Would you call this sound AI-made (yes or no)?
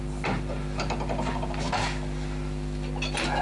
no